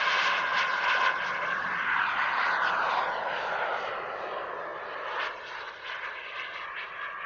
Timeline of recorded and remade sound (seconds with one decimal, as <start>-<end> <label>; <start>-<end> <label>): 0.0-7.3 recorded